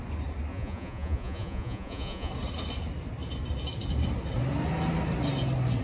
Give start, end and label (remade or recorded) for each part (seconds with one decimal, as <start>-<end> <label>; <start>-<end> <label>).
0.0-0.5 recorded; 0.5-2.3 remade; 2.3-5.8 recorded